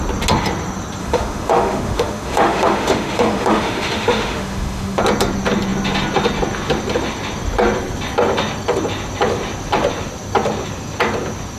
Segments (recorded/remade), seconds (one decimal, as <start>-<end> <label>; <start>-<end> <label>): 0.0-1.0 recorded; 1.0-5.0 remade; 5.0-11.6 recorded